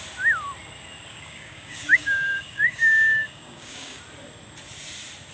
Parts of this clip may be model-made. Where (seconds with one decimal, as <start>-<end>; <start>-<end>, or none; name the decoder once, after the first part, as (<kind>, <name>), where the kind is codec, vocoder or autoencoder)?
1.1-4.0 (codec, DAC)